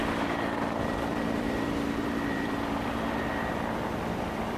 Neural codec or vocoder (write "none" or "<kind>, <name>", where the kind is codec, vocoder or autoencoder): vocoder, BigVGAN v2